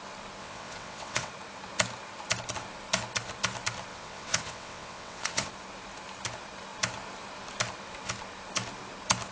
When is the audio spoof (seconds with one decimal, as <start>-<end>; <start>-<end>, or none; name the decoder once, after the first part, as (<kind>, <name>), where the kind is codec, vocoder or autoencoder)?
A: 0.4-1.3 (vocoder, WaveNeXt); 3.9-5.5